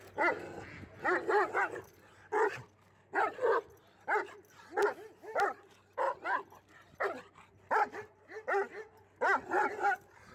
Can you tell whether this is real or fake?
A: real